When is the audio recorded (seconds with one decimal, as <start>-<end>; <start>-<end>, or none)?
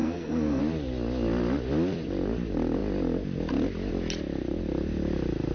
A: 0.6-5.5